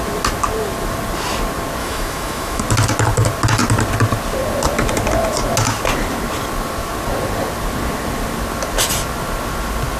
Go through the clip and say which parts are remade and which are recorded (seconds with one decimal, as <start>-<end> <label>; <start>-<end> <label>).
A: 0.0-1.8 recorded; 1.8-2.6 remade; 2.6-10.0 recorded